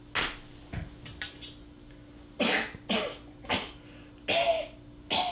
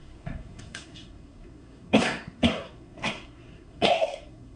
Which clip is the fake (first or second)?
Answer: second